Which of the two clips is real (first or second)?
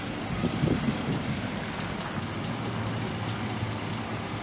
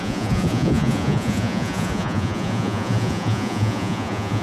first